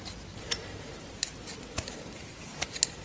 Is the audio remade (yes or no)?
no